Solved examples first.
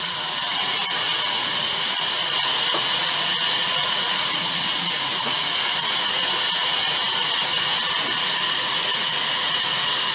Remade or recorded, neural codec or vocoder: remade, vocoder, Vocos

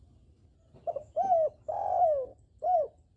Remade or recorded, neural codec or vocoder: recorded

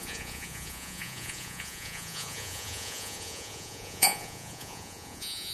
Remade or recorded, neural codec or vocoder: remade, vocoder, Vocos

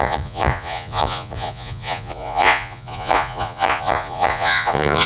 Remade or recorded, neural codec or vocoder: remade, vocoder, Vocos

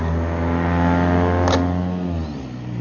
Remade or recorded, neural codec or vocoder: recorded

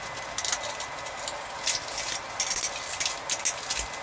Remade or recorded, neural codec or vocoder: recorded